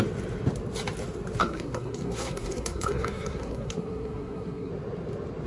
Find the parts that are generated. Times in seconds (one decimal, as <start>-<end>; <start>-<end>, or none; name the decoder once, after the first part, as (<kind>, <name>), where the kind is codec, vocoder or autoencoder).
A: 1.4-4.7 (codec, SNAC)